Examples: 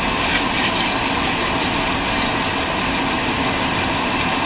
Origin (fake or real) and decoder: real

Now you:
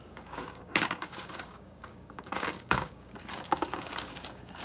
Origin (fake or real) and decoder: fake, codec, DAC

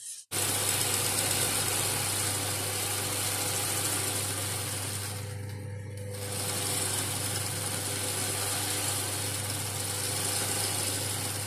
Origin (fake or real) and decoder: real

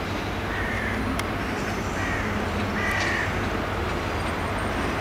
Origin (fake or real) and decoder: real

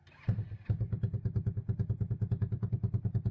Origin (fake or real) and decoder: real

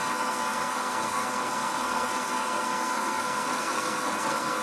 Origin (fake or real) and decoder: fake, codec, SNAC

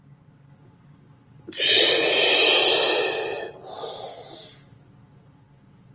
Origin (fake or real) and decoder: real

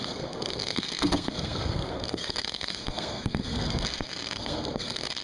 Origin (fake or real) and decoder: fake, codec, SNAC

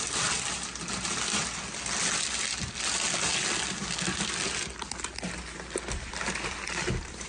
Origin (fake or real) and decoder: real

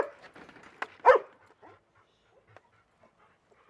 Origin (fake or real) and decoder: real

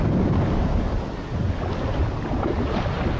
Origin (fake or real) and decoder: real